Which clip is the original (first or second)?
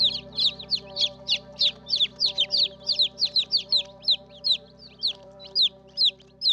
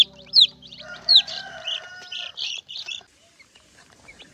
first